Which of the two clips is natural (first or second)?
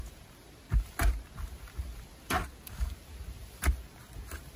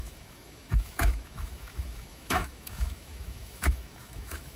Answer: first